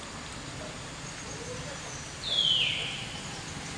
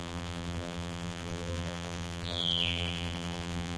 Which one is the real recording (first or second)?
first